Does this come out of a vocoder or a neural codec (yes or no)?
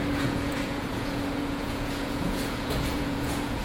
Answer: yes